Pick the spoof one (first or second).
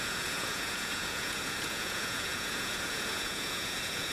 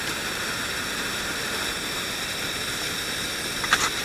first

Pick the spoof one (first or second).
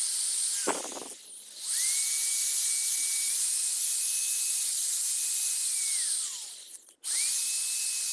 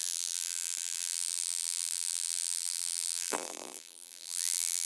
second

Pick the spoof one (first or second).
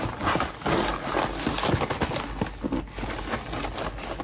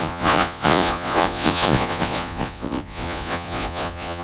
second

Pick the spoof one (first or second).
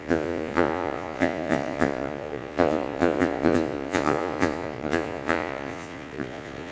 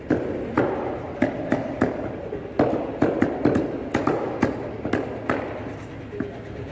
first